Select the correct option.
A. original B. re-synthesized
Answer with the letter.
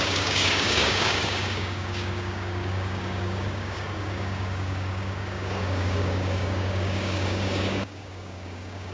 B